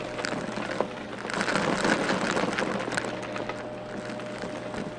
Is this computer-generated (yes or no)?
no